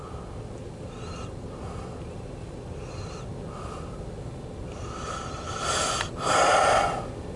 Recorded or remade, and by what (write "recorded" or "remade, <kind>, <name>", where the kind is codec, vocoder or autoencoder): recorded